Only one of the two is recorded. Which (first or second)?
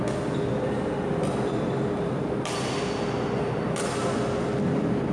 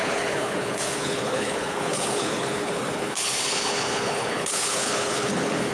first